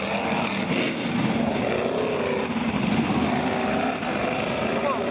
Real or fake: real